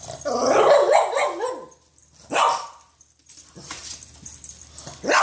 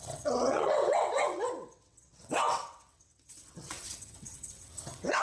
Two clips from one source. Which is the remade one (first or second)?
second